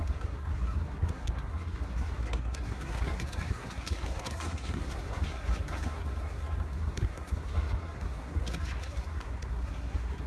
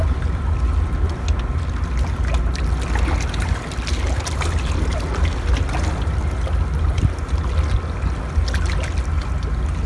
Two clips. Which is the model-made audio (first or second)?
first